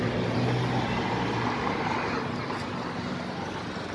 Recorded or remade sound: recorded